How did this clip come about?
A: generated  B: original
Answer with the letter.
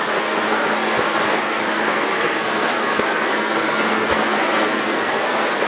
A